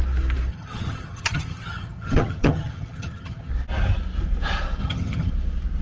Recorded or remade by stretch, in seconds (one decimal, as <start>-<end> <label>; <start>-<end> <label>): 0.0-0.5 recorded; 0.5-3.5 remade; 3.5-4.8 recorded; 4.8-5.3 remade; 5.3-5.8 recorded